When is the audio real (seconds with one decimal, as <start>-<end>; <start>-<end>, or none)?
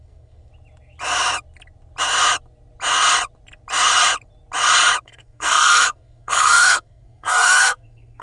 0.5-5.0